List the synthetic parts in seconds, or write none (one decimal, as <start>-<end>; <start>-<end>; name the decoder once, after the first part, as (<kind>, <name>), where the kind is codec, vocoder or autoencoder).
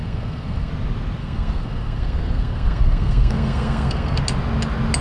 0.0-0.7 (codec, SNAC); 1.2-4.2